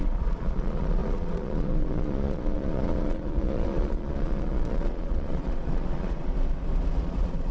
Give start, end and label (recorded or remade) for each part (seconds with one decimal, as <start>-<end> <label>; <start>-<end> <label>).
0.0-6.3 remade; 6.3-7.0 recorded; 7.0-7.5 remade